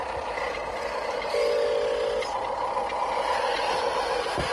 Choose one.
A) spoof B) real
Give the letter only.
B